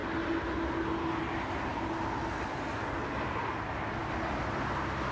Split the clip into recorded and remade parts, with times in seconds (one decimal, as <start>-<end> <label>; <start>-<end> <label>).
0.0-1.7 recorded; 1.7-2.6 remade; 2.6-5.1 recorded